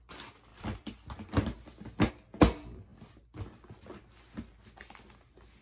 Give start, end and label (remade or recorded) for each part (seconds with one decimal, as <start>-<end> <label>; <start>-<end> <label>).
0.0-5.6 recorded